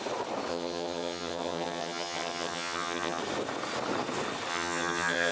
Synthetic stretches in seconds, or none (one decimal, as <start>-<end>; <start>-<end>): 0.5-3.2; 4.5-5.3